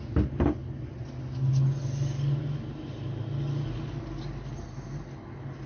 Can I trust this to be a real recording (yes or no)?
yes